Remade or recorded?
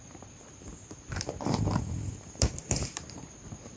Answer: remade